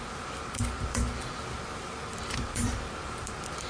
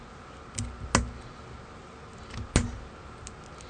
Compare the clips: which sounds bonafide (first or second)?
second